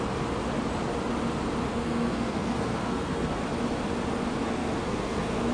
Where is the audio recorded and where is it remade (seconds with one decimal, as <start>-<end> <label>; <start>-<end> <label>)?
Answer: 0.0-1.7 recorded; 1.7-3.4 remade; 3.4-4.4 recorded; 4.4-5.5 remade